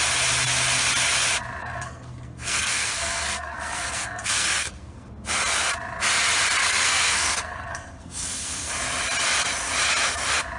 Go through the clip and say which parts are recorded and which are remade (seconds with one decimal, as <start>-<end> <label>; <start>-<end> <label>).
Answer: 0.0-1.6 recorded; 1.6-5.1 remade; 5.1-6.6 recorded; 6.6-8.7 remade; 8.7-10.6 recorded